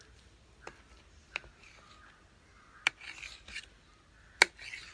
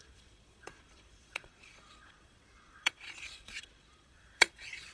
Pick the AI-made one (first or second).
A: second